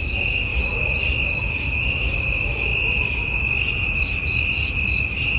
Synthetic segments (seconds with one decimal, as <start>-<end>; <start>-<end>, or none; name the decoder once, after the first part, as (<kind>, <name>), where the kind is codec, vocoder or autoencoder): none

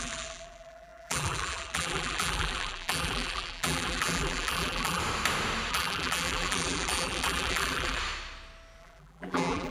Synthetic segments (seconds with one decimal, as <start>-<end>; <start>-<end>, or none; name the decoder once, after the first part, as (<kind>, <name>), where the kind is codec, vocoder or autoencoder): 0.0-5.0 (vocoder, BigVGAN v2); 5.7-8.0; 8.8-9.7

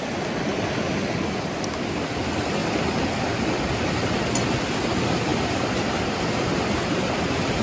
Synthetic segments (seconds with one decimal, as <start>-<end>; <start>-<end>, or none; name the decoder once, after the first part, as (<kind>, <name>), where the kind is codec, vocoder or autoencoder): none

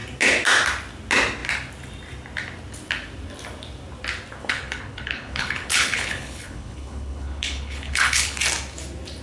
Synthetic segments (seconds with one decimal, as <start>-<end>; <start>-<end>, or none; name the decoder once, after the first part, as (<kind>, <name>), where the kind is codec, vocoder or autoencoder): 4.4-8.4 (codec, HILCodec)

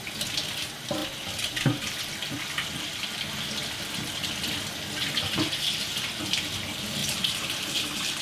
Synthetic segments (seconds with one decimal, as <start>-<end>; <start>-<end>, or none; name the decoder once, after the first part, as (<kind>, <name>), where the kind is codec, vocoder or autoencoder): 7.0-7.7 (vocoder, BigVGAN v2)

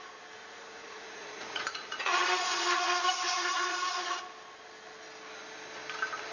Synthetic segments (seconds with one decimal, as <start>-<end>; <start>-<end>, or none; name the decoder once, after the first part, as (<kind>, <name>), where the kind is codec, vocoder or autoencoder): 0.4-4.2 (vocoder, Vocos)